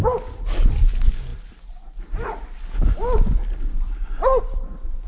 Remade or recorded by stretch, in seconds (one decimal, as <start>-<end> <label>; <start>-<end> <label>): 0.0-5.1 recorded